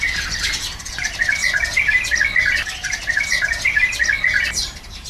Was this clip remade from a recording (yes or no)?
yes